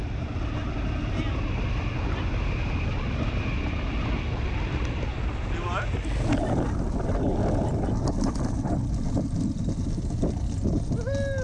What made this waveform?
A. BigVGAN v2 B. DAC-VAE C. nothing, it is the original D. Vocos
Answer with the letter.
C